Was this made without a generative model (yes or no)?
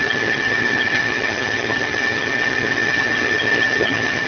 no